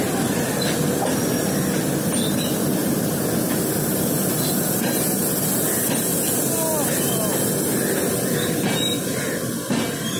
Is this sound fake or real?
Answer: real